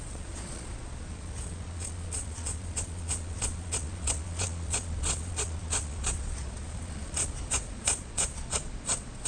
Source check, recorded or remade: remade